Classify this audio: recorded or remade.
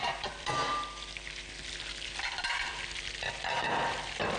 remade